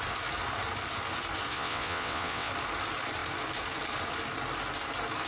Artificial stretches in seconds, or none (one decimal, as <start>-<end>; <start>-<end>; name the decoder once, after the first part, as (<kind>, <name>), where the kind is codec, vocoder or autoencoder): 1.5-2.5 (vocoder, WaveNeXt)

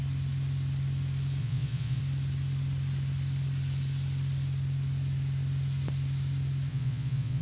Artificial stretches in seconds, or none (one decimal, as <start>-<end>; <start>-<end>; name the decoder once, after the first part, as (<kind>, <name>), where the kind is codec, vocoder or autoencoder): 1.4-2.0 (vocoder, WaveNeXt); 6.7-7.4

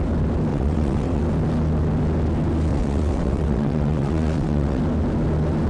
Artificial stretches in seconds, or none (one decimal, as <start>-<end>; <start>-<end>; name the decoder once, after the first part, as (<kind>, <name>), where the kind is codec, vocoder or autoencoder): 0.5-1.2 (vocoder, WaveNeXt); 2.7-4.8

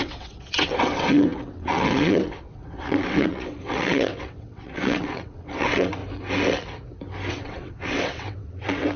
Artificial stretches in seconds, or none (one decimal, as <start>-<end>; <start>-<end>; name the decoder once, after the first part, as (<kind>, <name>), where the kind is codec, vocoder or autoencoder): 0.0-6.0 (vocoder, WaveNeXt); 7.3-9.0

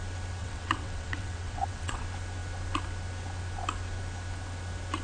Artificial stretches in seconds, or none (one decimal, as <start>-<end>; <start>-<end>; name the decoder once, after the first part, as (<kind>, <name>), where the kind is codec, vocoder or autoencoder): 0.4-2.0 (vocoder, WaveNeXt)

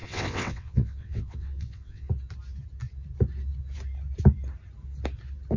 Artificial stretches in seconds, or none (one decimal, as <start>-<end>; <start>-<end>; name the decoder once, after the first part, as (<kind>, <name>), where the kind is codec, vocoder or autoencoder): 0.0-2.1 (vocoder, WaveNeXt)

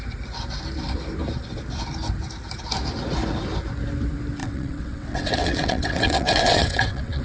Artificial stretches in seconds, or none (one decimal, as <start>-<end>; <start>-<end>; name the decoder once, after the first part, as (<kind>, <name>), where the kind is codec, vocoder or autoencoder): 4.4-7.2 (vocoder, WaveNeXt)